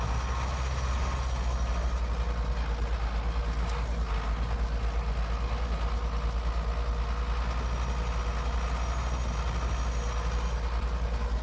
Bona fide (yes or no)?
yes